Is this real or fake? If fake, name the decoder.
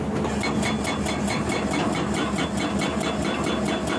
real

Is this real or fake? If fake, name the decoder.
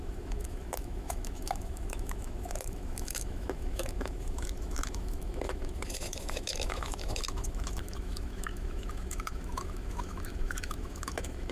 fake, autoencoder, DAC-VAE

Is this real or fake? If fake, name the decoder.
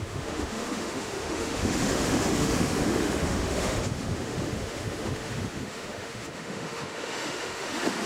fake, autoencoder, DAC-VAE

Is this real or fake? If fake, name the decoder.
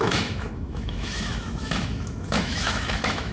fake, autoencoder, DAC-VAE